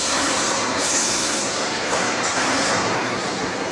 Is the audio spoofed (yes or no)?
yes